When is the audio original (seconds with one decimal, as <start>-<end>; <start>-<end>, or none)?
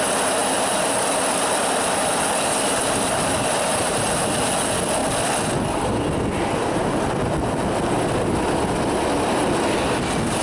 0.0-0.4; 4.1-10.4